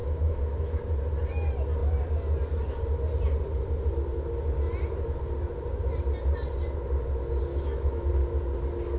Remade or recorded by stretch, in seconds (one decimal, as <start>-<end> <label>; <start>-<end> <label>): 0.0-0.8 remade; 0.8-7.5 recorded; 7.5-8.1 remade; 8.1-9.0 recorded